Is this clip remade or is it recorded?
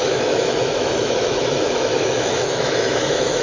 remade